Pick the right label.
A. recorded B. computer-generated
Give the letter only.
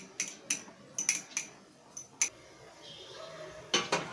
A